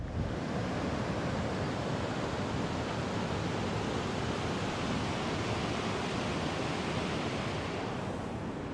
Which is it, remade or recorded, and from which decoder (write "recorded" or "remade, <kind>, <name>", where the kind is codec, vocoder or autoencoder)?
recorded